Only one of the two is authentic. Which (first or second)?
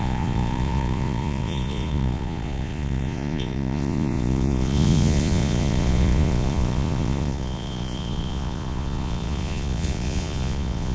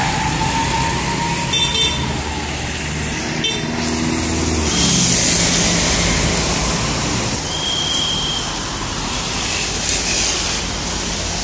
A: second